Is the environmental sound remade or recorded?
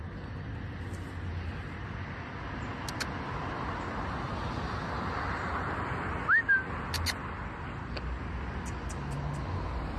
recorded